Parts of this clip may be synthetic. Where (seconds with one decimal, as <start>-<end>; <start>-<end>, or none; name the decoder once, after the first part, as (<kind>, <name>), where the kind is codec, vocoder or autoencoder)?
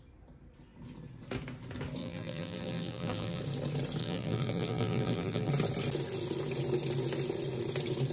2.0-3.4 (vocoder, BigVGAN v2); 4.0-5.5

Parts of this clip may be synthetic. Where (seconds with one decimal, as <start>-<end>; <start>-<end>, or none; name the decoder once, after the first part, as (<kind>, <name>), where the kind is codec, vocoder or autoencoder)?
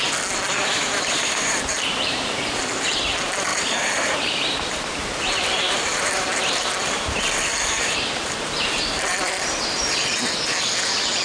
0.6-2.6 (vocoder, BigVGAN v2); 3.5-6.7; 7.5-10.0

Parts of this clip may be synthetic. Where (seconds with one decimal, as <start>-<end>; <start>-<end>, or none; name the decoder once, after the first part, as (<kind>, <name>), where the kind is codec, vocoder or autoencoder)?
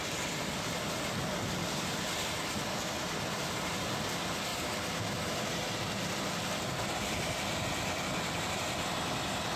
none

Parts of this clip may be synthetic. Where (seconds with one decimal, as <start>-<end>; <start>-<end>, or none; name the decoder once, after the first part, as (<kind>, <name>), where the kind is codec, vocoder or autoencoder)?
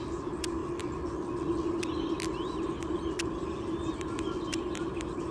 0.0-0.6 (vocoder, BigVGAN v2); 3.7-5.3